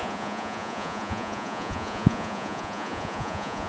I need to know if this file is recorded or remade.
remade